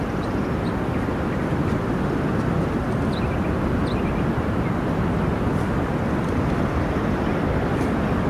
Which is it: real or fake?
real